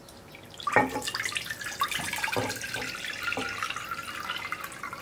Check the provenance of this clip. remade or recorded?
recorded